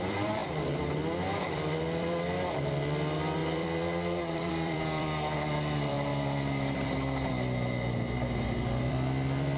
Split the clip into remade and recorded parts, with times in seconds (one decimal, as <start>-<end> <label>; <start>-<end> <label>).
0.0-0.4 remade; 0.4-1.4 recorded; 1.4-6.1 remade; 6.1-8.9 recorded; 8.9-9.6 remade